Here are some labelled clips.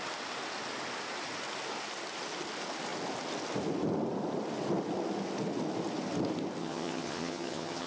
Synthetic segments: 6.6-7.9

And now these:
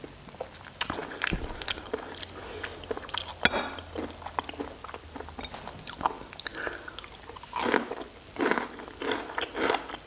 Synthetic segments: none